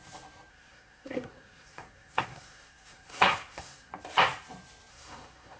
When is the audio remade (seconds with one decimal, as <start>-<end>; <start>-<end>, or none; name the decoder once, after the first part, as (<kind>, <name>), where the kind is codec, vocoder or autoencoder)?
0.5-3.9 (codec, SNAC); 4.9-5.6